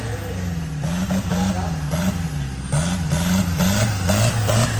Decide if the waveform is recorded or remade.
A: recorded